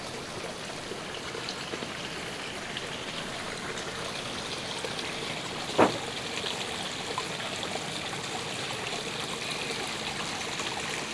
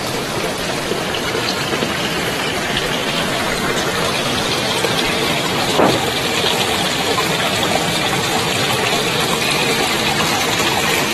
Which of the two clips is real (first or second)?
first